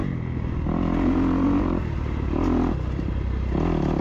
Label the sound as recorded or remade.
recorded